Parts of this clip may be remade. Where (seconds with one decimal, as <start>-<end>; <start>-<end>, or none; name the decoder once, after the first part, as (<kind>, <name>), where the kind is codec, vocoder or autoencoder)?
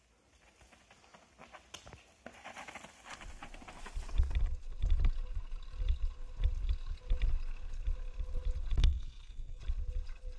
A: 8.8-9.6 (codec, SNAC)